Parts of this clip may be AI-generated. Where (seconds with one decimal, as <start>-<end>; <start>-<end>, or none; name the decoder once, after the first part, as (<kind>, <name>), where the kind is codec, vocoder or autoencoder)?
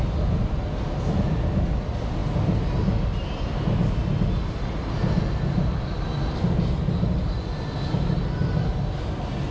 none